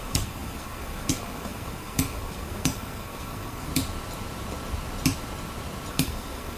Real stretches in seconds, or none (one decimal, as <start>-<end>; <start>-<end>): 3.7-5.9

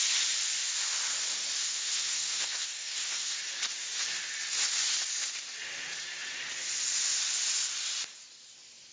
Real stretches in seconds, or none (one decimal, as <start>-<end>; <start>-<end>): 0.0-1.6; 3.4-8.9

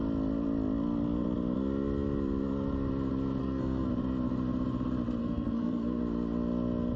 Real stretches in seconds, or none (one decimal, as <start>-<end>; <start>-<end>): 0.0-3.4; 3.9-5.2; 6.0-7.0

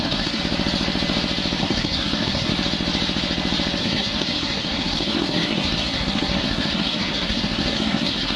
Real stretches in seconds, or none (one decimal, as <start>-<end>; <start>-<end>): 0.4-1.6; 2.5-3.8

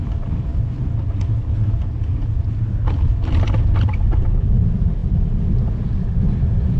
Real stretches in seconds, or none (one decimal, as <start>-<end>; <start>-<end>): 0.0-6.8